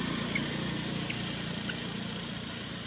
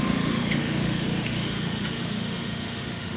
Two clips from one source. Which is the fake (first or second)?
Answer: second